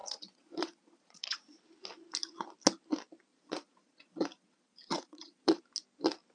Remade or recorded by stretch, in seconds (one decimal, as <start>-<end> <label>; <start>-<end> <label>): 0.0-1.6 remade; 1.6-3.3 recorded; 3.3-5.6 remade; 5.6-6.3 recorded